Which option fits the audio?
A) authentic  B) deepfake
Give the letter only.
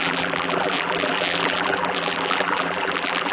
B